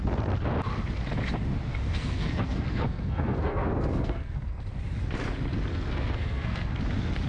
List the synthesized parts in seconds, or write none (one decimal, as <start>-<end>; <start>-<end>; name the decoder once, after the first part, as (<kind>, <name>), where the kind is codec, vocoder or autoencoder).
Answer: 1.7-4.6 (codec, SNAC); 5.7-6.8